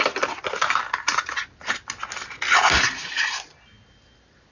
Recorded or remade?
recorded